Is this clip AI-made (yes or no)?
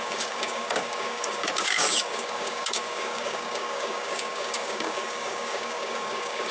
yes